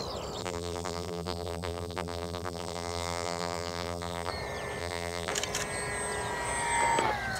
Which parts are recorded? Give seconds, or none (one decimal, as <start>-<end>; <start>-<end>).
0.0-0.4; 4.3-4.8; 5.3-7.4